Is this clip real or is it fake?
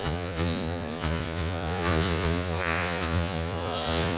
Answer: fake